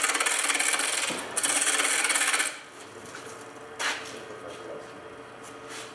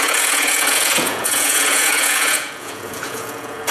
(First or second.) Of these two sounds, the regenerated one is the second